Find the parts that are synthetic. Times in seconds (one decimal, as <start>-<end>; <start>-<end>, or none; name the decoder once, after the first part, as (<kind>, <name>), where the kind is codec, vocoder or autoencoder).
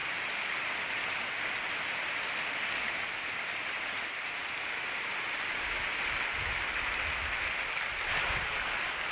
none